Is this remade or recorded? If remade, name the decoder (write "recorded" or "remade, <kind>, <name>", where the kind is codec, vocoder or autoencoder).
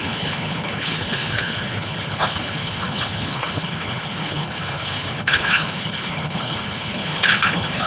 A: remade, codec, HILCodec